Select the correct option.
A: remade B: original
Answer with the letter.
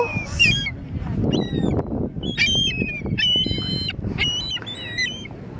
A